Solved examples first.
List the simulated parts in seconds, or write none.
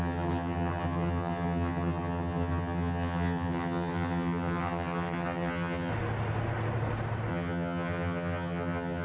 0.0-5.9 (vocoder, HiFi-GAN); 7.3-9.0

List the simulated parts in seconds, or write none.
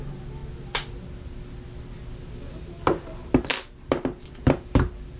none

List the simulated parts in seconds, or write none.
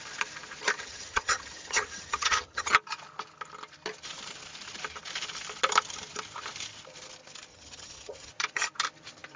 0.8-2.7 (vocoder, HiFi-GAN); 7.5-8.3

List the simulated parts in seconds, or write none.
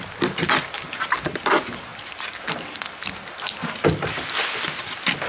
none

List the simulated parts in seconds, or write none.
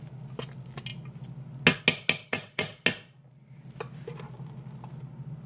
none